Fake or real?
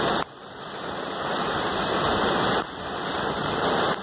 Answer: real